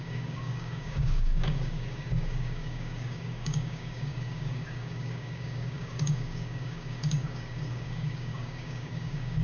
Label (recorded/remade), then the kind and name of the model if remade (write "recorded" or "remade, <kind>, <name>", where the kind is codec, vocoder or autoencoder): remade, codec, DAC